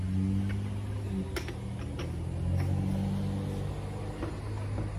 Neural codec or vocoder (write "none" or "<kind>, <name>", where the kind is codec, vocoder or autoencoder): none